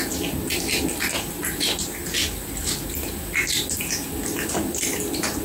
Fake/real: real